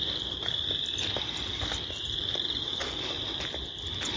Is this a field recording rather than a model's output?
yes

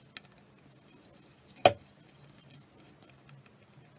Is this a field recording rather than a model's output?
yes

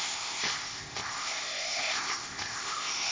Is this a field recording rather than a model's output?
no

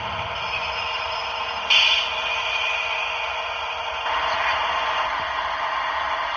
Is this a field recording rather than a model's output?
yes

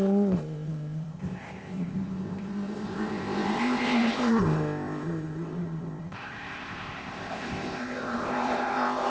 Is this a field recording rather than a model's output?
no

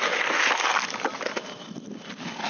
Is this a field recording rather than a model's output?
yes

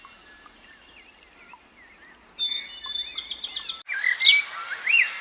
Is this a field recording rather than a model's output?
yes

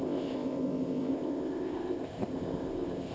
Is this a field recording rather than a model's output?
no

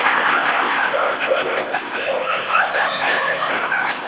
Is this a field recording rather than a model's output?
no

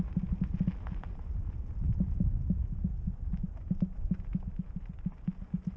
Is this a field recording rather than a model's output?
yes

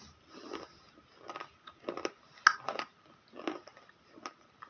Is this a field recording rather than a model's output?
yes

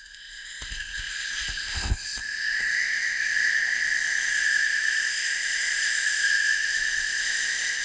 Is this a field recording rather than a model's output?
no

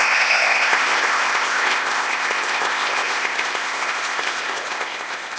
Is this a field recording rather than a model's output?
no